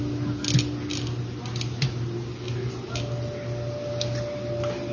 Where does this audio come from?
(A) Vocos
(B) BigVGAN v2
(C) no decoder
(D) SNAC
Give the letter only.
C